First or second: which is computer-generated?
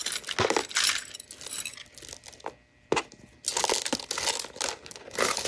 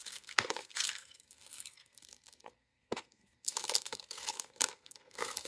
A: second